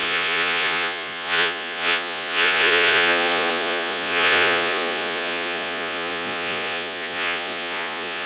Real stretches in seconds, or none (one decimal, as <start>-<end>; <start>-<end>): none